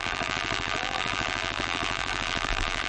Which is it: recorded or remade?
remade